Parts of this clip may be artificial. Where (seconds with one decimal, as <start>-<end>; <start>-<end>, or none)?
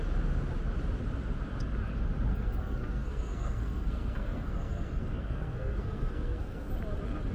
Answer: 2.3-6.7